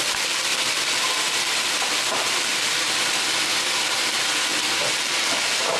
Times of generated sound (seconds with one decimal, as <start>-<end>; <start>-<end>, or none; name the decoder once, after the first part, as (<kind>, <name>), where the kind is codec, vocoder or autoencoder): 0.5-4.0 (vocoder, BigVGAN v2)